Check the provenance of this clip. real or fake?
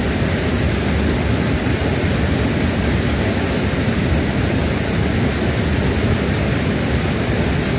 real